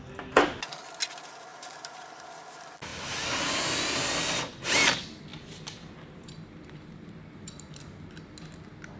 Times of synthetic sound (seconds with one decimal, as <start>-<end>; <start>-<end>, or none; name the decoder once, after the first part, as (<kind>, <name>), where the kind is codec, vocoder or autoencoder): 1.5-2.1 (vocoder, BigVGAN v2); 5.3-7.9